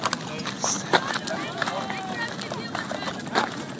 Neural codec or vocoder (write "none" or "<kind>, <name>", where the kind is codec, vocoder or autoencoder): none